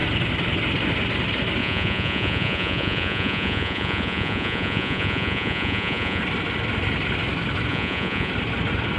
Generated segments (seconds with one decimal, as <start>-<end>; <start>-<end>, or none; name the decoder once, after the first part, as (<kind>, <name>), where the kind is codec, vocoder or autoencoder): 1.6-6.2 (vocoder, Vocos); 7.7-8.3